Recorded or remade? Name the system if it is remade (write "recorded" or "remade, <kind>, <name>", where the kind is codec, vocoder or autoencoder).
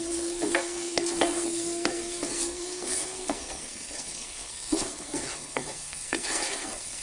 remade, codec, SNAC